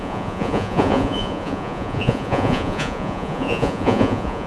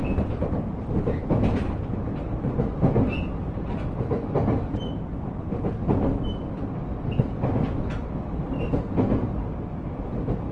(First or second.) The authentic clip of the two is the second